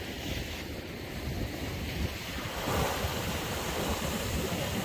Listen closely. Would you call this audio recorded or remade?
remade